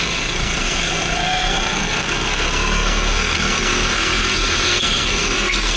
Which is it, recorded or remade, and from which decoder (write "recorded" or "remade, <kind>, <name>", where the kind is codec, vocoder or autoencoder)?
remade, codec, SNAC